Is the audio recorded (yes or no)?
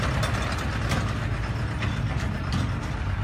yes